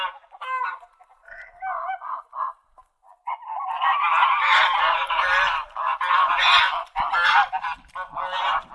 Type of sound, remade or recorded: remade